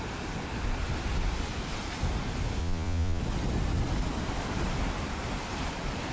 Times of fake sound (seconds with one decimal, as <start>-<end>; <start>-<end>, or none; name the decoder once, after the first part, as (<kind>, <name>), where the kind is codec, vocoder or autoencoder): 2.6-3.2 (vocoder, Vocos)